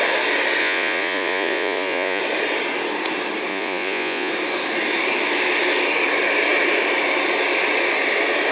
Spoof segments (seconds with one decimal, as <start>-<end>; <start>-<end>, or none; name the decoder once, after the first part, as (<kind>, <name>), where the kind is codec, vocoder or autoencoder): 0.6-2.2 (vocoder, Vocos); 3.5-4.3